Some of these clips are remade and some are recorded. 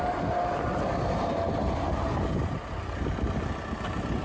recorded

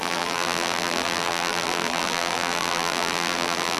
remade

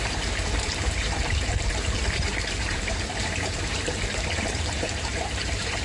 remade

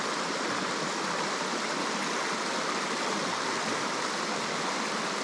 recorded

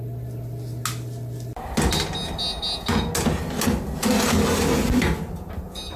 recorded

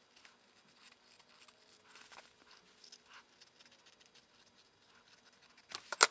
recorded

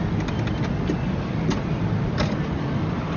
recorded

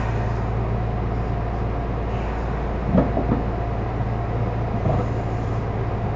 recorded